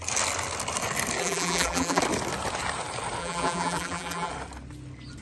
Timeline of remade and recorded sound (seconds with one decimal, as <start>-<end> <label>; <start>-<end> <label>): 0.0-1.2 recorded; 1.2-2.0 remade; 2.0-3.2 recorded; 3.2-4.3 remade; 4.3-5.2 recorded